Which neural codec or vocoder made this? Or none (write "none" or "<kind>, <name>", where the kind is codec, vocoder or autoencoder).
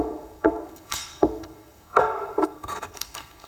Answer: codec, SNAC